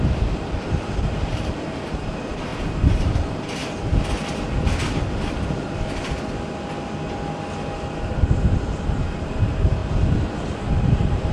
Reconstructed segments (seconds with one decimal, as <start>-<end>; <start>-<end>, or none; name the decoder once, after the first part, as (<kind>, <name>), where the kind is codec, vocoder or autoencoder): 0.0-3.6 (vocoder, BigVGAN v2); 8.8-9.8; 10.7-11.3